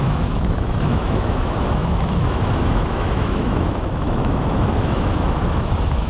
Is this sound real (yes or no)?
no